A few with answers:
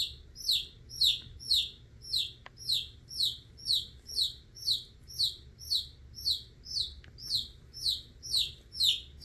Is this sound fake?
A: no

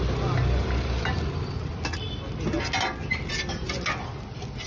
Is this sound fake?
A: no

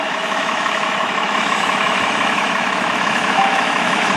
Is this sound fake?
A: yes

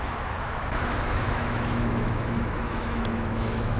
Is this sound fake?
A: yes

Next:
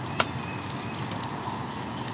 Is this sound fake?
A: no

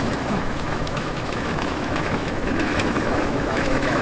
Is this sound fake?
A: yes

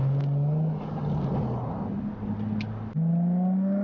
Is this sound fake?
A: no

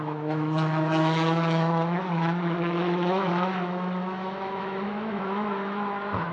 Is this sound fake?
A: yes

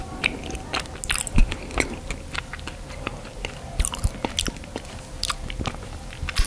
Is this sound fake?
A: no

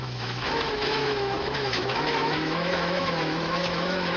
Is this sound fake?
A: yes